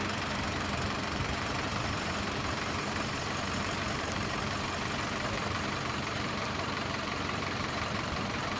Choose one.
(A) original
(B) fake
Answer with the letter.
B